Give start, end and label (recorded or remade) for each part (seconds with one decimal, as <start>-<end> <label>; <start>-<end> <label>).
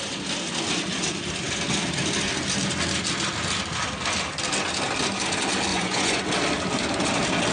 0.0-5.7 recorded; 5.7-6.2 remade; 6.2-7.5 recorded